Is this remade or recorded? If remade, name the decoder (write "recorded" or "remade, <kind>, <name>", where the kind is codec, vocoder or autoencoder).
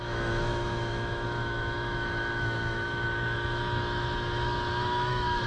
remade, autoencoder, DAC-VAE